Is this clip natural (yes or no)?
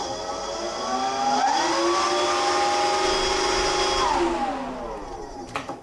yes